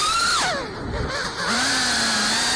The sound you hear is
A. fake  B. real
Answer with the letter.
B